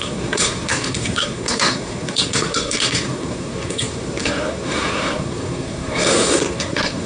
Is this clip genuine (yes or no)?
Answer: no